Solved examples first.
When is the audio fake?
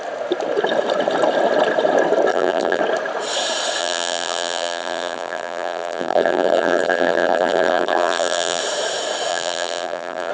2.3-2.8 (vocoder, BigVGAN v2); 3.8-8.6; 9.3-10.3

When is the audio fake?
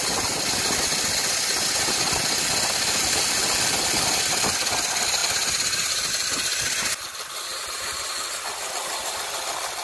5.2-6.1 (vocoder, BigVGAN v2); 7.5-8.2